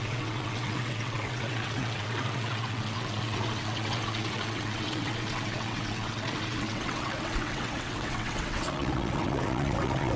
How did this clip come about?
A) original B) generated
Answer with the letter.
B